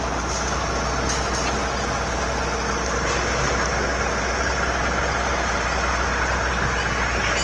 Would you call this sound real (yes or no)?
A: yes